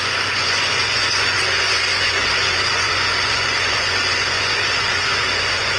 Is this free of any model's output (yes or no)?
no